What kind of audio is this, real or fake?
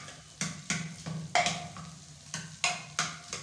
real